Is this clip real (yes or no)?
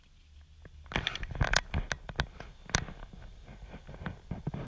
yes